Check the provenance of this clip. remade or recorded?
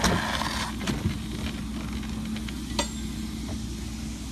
recorded